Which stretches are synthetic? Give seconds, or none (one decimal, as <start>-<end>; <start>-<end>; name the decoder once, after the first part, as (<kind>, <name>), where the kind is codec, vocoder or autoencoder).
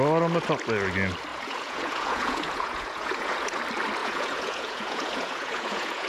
1.3-3.6 (vocoder, Vocos); 4.0-6.1